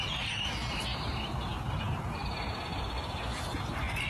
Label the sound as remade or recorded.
recorded